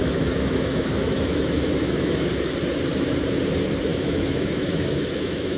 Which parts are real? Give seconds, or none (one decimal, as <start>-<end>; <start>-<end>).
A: 2.3-3.9